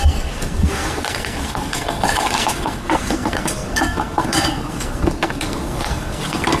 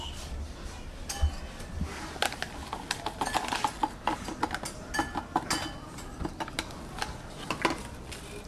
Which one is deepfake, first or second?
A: first